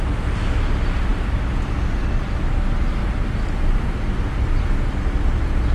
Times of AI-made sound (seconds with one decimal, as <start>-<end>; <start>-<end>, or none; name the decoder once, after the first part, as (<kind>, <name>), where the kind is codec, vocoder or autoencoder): 3.0-5.7 (vocoder, BigVGAN v2)